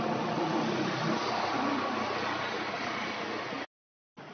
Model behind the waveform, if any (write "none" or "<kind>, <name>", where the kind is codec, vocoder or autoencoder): none